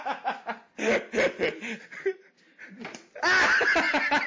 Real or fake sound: real